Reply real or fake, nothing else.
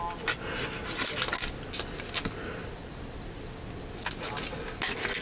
real